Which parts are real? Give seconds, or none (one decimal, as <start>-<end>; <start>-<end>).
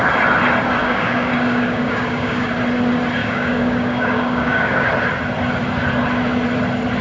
0.0-0.8; 2.5-3.2; 4.9-7.0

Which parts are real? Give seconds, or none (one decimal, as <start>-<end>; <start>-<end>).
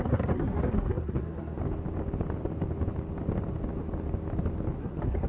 1.6-4.8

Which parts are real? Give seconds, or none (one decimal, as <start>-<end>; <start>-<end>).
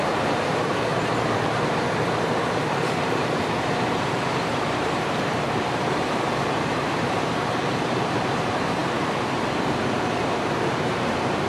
none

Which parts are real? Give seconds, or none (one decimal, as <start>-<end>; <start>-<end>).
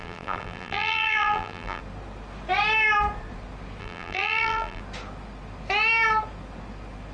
1.8-3.8; 4.8-7.1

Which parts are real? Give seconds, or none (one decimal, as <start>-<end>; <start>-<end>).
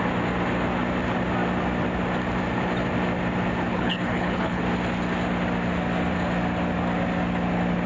0.0-3.7; 4.6-7.9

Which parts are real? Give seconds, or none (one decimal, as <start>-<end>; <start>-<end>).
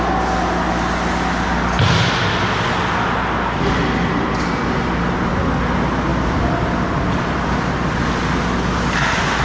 0.0-9.4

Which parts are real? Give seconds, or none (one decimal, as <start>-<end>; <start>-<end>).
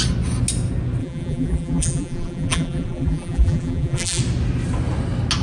0.0-1.0; 4.2-5.4